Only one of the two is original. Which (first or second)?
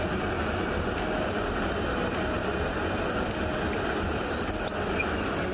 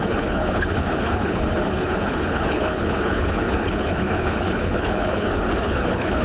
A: first